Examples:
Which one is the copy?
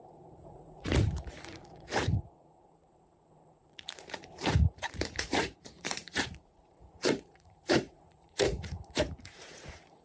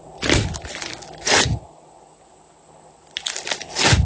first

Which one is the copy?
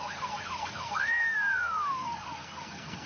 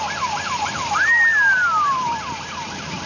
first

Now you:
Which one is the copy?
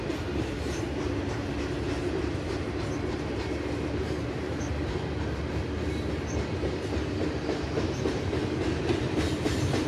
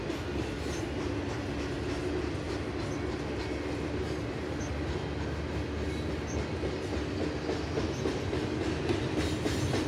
first